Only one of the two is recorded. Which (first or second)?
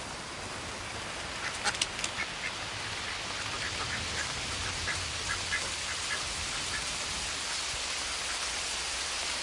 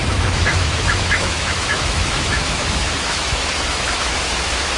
first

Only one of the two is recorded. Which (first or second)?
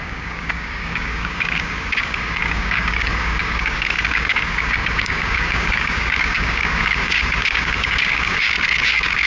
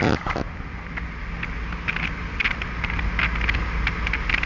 second